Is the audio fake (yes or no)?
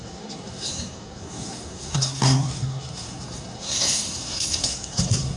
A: yes